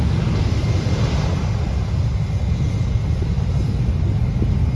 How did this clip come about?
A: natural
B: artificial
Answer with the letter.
A